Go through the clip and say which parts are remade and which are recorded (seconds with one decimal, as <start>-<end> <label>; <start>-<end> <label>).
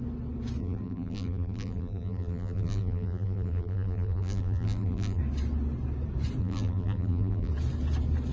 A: 0.0-0.6 recorded; 0.6-5.2 remade; 5.2-6.4 recorded; 6.4-7.5 remade; 7.5-8.3 recorded